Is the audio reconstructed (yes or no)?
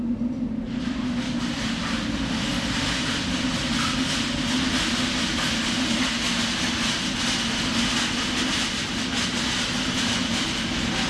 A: no